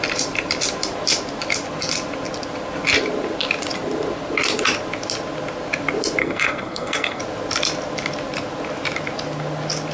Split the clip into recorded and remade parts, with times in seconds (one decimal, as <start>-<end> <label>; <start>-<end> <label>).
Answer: 0.0-6.2 recorded; 6.2-7.2 remade; 7.2-9.9 recorded